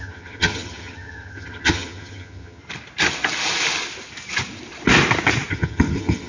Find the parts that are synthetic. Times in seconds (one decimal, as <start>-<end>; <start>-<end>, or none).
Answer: 0.0-2.6; 5.5-6.3

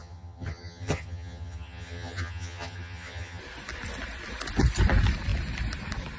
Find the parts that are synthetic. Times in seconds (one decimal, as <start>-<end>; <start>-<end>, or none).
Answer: 0.0-3.4

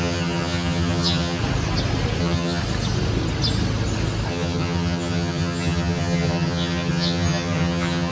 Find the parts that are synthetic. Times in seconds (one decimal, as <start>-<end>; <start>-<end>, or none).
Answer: 0.0-1.4; 2.2-2.6; 4.3-8.1

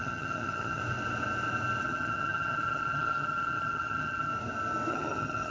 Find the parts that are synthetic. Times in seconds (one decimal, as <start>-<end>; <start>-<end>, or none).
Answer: 0.0-0.8; 1.8-4.3; 4.9-5.5